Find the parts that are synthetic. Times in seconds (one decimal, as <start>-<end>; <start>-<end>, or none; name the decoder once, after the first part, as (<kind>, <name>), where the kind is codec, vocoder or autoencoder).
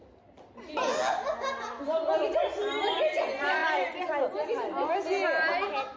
2.6-3.2 (vocoder, BigVGAN v2); 3.6-4.1